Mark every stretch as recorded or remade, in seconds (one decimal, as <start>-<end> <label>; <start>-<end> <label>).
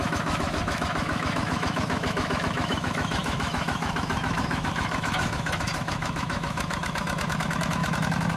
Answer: 0.0-8.4 remade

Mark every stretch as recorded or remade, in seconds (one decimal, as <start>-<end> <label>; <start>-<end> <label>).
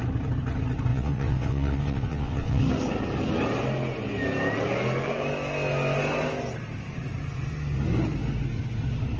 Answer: 0.0-0.9 recorded; 0.9-2.6 remade; 2.6-9.2 recorded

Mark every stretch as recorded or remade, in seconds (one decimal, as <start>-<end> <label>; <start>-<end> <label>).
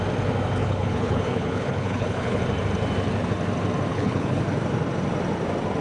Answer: 0.0-0.6 recorded; 0.6-2.4 remade; 2.4-3.9 recorded; 3.9-4.4 remade; 4.4-5.8 recorded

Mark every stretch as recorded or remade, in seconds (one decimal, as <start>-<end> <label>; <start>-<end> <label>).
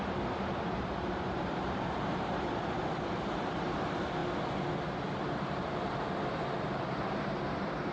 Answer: 0.0-4.2 remade; 4.2-5.2 recorded; 5.2-7.9 remade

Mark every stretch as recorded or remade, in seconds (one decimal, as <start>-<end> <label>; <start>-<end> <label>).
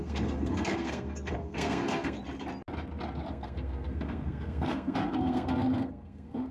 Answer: 0.0-2.2 remade; 2.2-3.3 recorded; 3.3-6.5 remade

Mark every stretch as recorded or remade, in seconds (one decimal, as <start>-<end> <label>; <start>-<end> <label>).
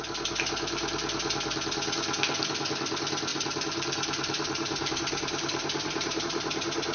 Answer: 0.0-3.3 recorded; 3.3-6.2 remade; 6.2-6.9 recorded